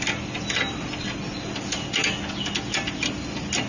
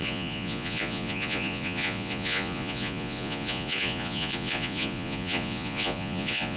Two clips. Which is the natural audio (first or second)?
first